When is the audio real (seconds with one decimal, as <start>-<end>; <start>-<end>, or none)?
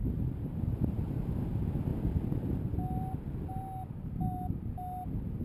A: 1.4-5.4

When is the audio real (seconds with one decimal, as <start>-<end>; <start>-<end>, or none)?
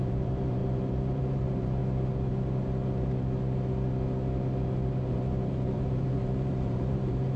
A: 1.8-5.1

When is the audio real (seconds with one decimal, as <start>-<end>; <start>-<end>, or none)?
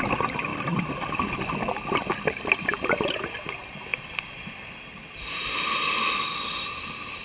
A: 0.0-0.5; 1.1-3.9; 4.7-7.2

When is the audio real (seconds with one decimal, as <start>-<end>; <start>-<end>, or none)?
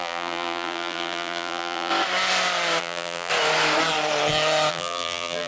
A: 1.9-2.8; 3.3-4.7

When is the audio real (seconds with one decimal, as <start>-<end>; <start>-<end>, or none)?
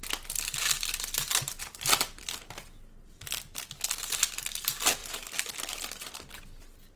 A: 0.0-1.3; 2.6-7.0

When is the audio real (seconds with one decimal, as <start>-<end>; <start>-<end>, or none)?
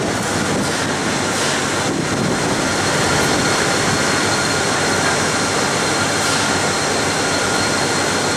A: 0.0-2.7; 7.7-8.4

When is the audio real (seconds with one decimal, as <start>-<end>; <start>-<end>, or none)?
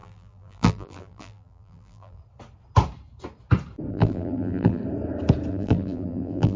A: 2.2-3.9; 4.8-5.5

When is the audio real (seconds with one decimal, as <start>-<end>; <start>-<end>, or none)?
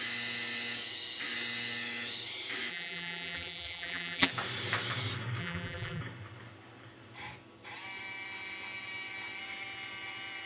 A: 0.0-2.7; 4.3-5.4; 6.0-10.5